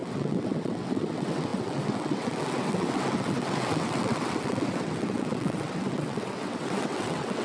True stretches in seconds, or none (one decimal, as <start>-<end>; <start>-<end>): none